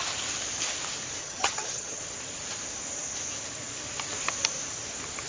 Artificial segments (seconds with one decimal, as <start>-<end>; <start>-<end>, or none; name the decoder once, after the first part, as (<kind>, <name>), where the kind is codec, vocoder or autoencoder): 1.2-2.0 (vocoder, HiFi-GAN)